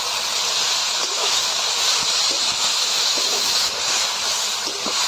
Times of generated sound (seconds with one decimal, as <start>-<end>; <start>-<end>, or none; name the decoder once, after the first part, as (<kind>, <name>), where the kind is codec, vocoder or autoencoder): 0.8-1.5 (autoencoder, DAC-VAE); 2.7-3.7